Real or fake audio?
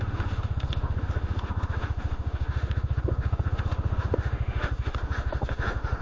fake